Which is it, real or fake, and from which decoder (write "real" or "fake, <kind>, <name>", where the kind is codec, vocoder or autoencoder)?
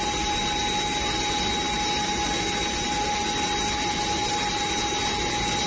real